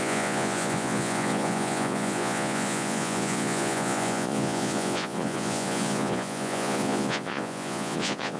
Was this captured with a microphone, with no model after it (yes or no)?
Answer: no